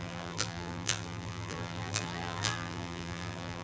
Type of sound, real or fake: fake